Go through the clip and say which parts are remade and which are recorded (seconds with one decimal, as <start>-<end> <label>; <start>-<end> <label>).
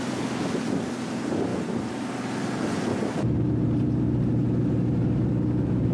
0.0-5.9 recorded